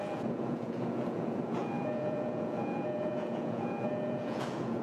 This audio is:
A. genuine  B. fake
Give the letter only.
B